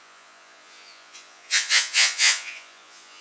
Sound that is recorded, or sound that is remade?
remade